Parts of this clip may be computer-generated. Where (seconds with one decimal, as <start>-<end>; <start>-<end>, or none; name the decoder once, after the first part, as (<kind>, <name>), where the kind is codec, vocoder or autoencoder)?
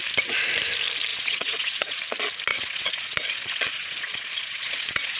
1.1-2.0 (vocoder, Vocos); 2.5-5.2